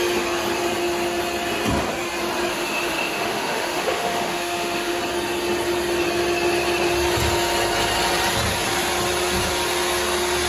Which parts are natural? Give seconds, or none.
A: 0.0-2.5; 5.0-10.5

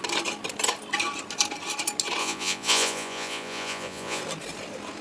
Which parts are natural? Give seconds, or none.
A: 0.0-2.2; 4.2-5.0

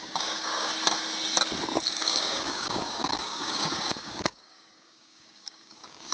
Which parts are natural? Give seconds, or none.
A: 0.7-1.9

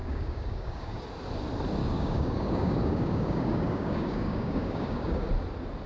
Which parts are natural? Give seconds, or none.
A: 1.0-1.8; 5.3-5.9

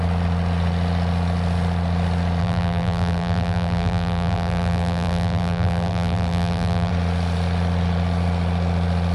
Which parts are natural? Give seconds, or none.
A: 0.0-2.4; 6.9-9.1

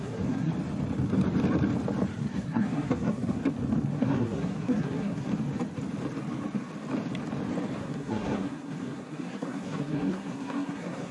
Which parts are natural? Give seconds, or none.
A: 0.5-2.3; 3.4-3.9; 5.3-7.8